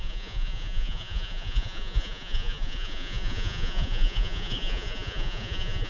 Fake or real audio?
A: fake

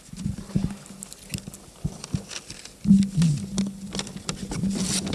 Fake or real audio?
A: real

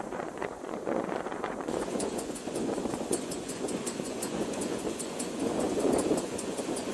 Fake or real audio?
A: fake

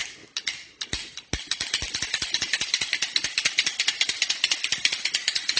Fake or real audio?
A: real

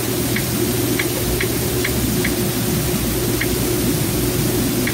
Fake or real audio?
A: real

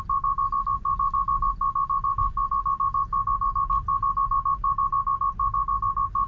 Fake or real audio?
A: real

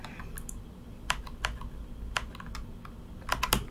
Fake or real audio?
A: real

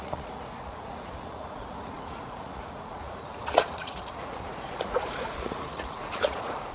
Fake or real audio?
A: fake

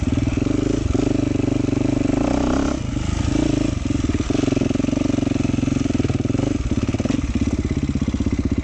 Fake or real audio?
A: real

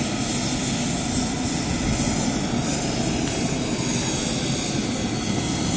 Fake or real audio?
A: real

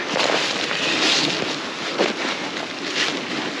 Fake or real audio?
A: real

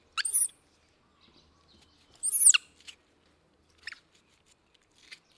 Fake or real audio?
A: real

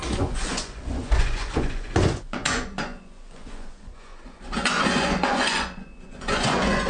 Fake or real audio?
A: fake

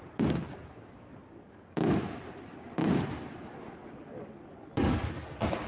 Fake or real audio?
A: real